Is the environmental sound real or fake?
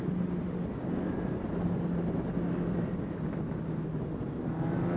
real